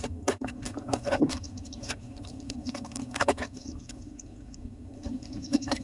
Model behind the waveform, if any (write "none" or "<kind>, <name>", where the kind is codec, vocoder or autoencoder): codec, SNAC